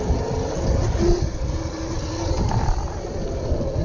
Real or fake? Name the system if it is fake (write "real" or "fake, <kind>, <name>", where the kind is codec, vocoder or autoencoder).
real